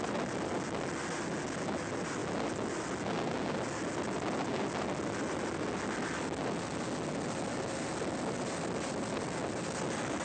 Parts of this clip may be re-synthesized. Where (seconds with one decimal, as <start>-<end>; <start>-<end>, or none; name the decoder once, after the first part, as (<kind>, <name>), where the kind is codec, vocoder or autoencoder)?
none